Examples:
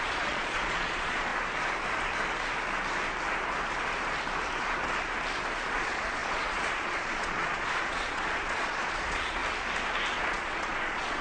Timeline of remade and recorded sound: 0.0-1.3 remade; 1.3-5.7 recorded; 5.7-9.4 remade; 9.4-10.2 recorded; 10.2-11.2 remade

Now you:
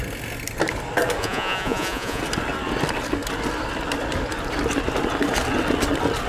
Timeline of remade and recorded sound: 0.0-1.2 recorded; 1.2-2.2 remade; 2.2-6.3 recorded